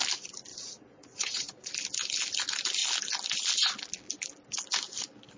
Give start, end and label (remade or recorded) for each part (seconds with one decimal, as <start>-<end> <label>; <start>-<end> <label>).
0.0-0.5 recorded; 0.5-1.7 remade; 1.7-5.4 recorded